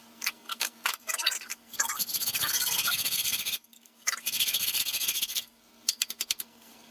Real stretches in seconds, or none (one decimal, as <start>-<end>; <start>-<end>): none